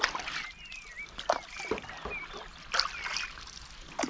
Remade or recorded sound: recorded